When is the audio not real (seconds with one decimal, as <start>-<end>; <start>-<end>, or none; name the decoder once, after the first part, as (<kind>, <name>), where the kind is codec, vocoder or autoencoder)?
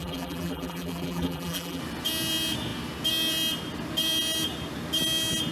0.0-1.8 (vocoder, BigVGAN v2)